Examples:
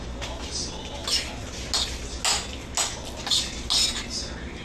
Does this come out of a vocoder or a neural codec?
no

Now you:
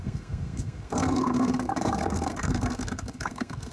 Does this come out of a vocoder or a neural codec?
yes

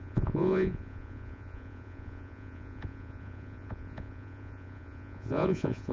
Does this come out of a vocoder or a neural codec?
yes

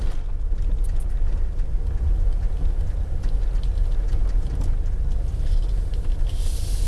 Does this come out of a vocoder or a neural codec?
no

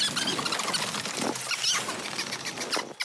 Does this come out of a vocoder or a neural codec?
no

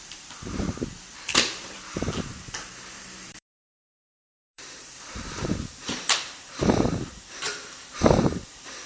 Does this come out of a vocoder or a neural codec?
yes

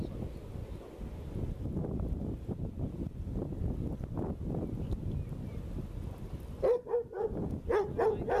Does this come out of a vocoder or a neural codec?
no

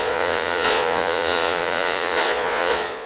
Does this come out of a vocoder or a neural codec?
yes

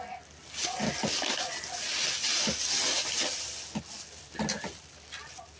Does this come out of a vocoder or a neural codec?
no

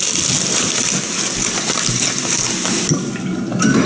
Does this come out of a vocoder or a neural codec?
no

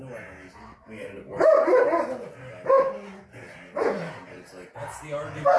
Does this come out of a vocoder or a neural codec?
no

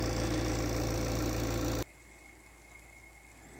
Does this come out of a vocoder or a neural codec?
no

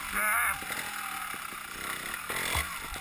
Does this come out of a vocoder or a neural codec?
no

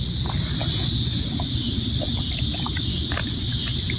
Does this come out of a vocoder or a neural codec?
no